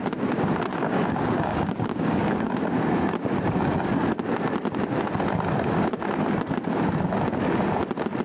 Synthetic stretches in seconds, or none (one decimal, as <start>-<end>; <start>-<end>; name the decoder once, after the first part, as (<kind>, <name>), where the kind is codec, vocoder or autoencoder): 0.7-2.5 (codec, DAC)